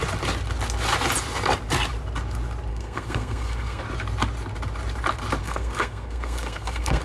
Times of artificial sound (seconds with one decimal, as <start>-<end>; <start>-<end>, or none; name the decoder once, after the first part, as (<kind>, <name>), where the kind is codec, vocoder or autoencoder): 2.7-3.8 (codec, SNAC); 5.4-7.0